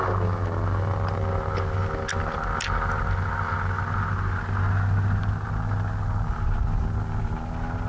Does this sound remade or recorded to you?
recorded